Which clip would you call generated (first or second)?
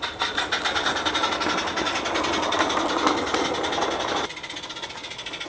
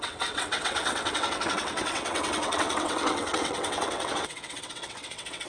second